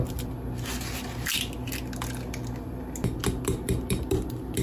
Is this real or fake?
real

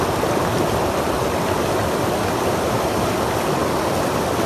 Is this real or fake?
real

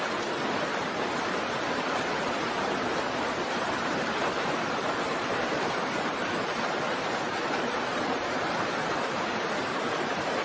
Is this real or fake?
fake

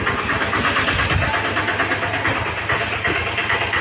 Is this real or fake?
real